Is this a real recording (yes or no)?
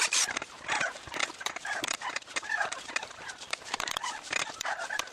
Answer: no